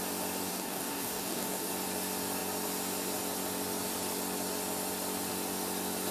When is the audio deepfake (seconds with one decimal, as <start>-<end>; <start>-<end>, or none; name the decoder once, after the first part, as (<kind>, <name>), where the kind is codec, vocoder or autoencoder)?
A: 0.5-1.7 (codec, DAC)